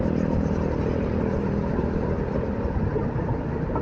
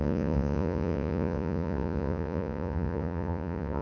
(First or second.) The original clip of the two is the first